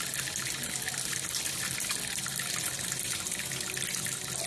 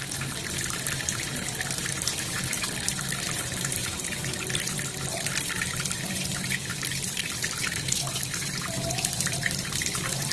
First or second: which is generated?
second